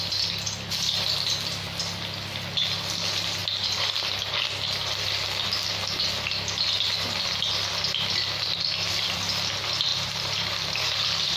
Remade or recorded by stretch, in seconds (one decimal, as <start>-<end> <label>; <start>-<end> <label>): 0.0-9.9 recorded; 9.9-11.4 remade